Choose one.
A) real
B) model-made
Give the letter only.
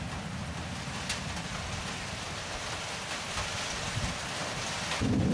A